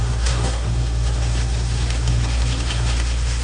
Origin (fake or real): fake